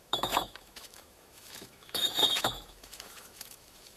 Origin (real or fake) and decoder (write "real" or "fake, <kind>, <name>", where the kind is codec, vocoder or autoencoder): fake, autoencoder, DAC-VAE